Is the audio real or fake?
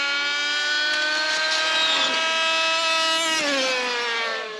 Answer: real